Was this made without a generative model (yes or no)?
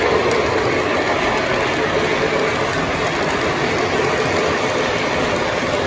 yes